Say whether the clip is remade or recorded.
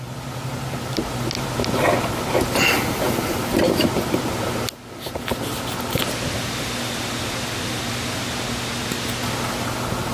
recorded